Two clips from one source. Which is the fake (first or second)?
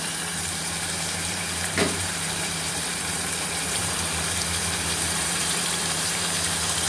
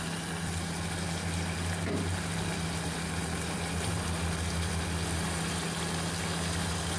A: first